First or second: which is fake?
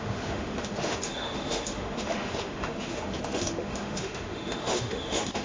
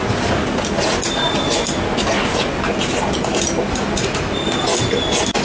first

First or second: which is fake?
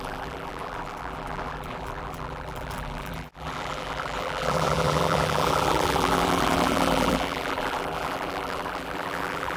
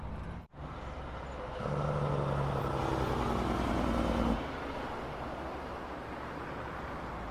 first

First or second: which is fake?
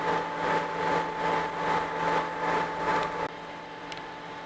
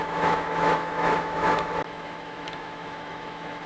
second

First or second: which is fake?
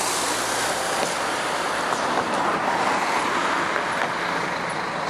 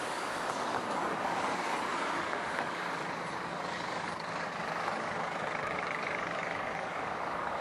second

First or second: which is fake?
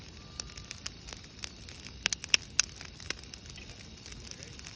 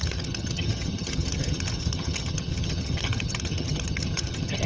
second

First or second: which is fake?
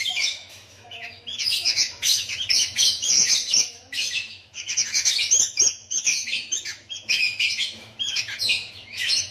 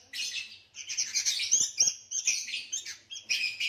first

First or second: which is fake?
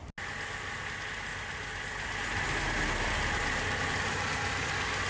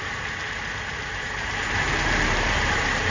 second